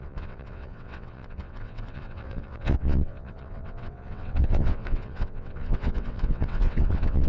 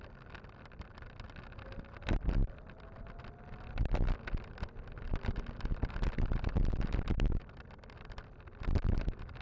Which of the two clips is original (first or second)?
second